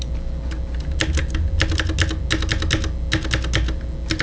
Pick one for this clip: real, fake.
real